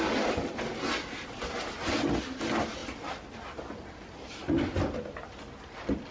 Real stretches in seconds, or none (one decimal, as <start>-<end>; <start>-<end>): 0.0-6.1

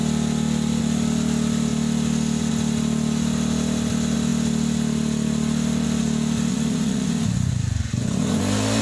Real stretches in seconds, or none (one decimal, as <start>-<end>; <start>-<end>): 0.0-6.5; 8.4-8.8

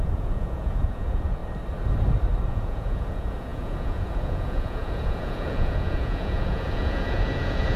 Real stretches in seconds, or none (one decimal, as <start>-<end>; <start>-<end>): 1.4-2.5

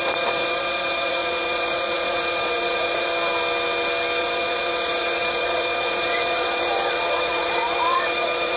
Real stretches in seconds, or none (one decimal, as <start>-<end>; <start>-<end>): 3.1-4.2

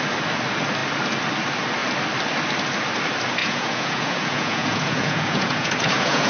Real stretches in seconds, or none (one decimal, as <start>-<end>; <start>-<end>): 0.0-3.4

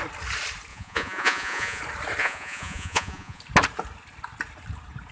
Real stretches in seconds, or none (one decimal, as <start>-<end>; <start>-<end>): 0.0-0.7; 1.8-2.2; 3.4-5.1

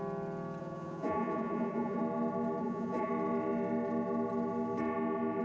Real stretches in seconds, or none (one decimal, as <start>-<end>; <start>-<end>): 0.0-0.6; 2.0-2.6; 3.1-5.4